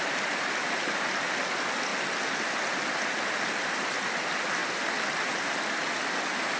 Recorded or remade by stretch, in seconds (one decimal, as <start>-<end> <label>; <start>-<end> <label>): 0.0-6.6 recorded